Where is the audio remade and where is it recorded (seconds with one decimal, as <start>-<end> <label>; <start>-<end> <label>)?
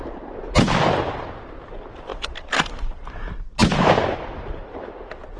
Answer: 0.0-5.4 recorded